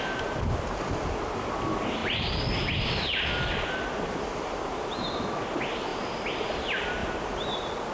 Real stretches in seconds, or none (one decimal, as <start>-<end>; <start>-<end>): 0.0-5.9; 6.6-7.9